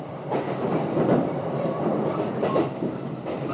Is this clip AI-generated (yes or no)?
yes